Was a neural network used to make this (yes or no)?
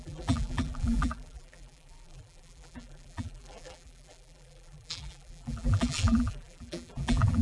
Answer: yes